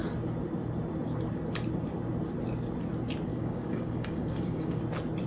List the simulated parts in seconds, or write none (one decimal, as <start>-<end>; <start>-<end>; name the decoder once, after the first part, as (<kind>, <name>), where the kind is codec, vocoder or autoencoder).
3.3-4.8 (codec, DAC)